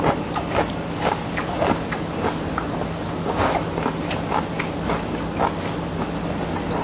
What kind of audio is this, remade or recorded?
recorded